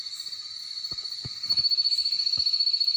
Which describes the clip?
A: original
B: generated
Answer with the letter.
A